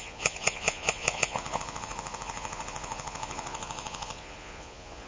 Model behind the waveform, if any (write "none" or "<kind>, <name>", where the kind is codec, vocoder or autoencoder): vocoder, Vocos